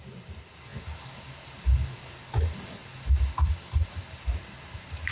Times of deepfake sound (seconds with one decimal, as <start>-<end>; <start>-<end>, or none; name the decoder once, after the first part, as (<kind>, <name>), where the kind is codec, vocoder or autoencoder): none